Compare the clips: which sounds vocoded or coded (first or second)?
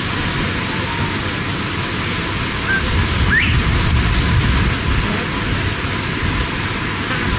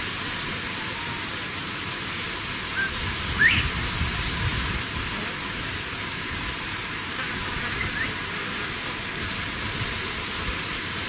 second